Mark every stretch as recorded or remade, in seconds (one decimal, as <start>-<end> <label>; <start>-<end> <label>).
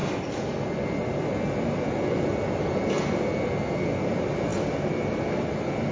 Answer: 0.0-5.9 recorded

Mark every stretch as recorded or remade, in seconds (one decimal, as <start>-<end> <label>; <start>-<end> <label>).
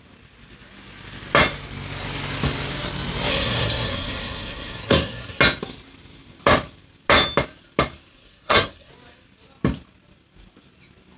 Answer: 0.0-3.3 recorded; 3.3-5.4 remade; 5.4-8.1 recorded; 8.1-8.9 remade; 8.9-11.2 recorded